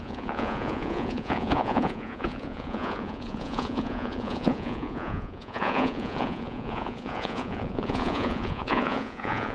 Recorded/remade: remade